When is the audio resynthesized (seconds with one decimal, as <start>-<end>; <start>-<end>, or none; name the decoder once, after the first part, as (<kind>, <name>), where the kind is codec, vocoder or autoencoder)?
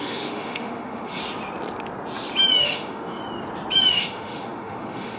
0.0-1.2 (autoencoder, DAC-VAE); 2.6-3.2; 3.9-5.2